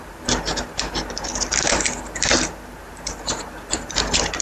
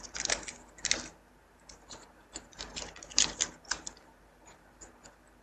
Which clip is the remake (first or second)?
first